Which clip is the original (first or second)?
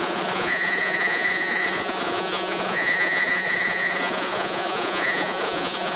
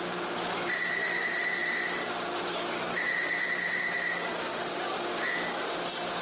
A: second